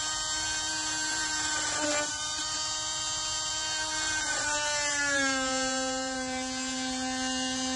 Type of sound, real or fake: fake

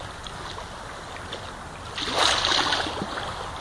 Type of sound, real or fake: real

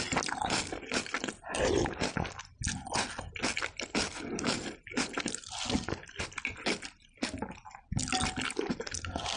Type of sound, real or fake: real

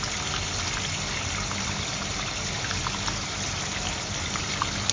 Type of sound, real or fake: real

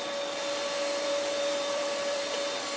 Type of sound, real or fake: fake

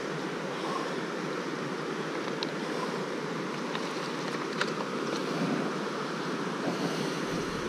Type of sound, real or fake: fake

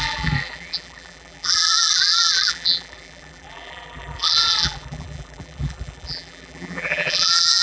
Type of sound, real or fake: fake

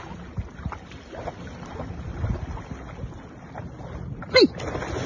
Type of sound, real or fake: real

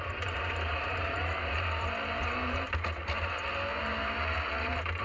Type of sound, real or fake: fake